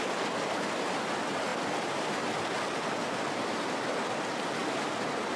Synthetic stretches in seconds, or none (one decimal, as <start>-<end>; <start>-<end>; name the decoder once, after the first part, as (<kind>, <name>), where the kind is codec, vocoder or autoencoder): none